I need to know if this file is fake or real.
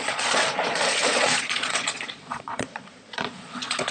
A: fake